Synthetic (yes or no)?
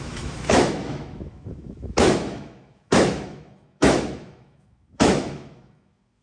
yes